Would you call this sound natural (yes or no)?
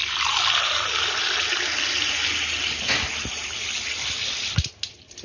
yes